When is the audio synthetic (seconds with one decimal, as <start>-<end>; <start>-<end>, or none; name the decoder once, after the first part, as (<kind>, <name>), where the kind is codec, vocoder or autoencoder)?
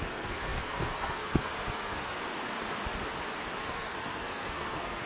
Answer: 0.0-2.2 (codec, SNAC); 3.6-5.1